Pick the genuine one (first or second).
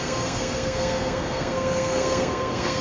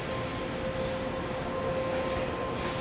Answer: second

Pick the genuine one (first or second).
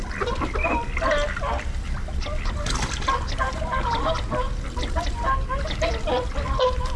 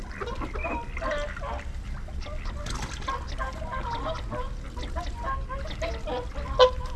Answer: second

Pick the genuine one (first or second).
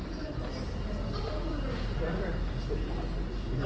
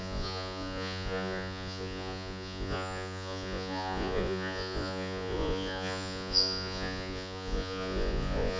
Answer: first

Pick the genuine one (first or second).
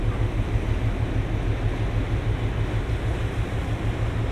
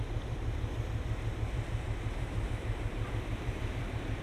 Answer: first